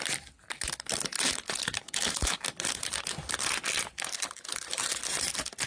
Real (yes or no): yes